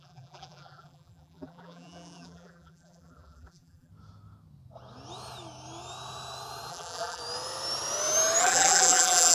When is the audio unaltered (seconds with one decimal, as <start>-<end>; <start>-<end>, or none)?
3.9-6.7; 7.2-8.4